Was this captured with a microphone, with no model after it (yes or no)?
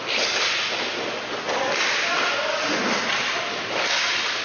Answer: yes